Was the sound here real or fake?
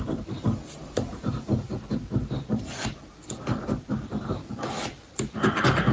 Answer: real